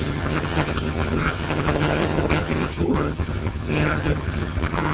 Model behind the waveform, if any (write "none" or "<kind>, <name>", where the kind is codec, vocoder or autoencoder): vocoder, HiFi-GAN